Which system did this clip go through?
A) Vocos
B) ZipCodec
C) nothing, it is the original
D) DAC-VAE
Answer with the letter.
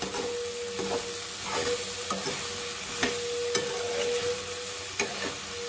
C